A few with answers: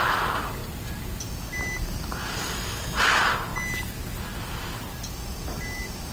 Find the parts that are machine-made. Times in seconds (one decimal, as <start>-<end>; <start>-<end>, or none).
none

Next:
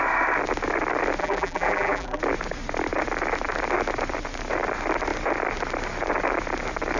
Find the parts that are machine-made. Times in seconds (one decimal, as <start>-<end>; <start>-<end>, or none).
1.2-2.2

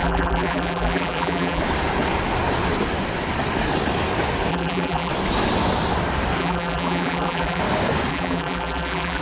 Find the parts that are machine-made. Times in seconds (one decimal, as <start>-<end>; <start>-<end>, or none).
0.0-1.6; 4.5-5.1; 6.4-7.6; 8.1-9.2

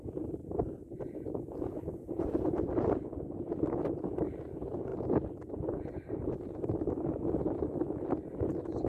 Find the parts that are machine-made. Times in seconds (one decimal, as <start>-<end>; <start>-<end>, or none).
0.4-3.9

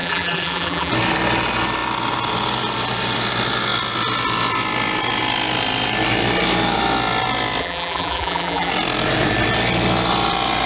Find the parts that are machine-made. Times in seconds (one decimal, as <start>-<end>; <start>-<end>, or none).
0.0-0.9; 7.6-8.7

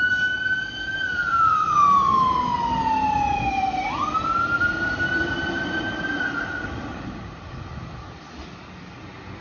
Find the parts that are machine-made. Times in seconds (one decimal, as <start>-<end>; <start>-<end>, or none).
1.1-1.8; 3.5-7.5

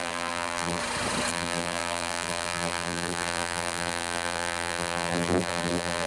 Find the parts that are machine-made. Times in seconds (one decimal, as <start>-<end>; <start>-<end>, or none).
0.0-0.8; 1.3-6.1